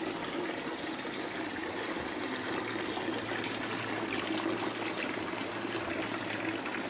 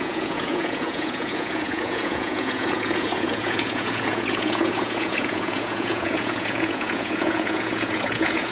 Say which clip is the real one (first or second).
first